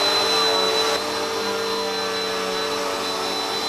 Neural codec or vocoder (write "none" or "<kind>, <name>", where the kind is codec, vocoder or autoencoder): none